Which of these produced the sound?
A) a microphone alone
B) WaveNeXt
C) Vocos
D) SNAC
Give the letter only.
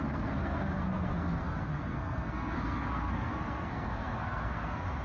D